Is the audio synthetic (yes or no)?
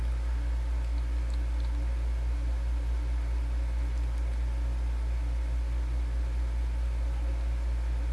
no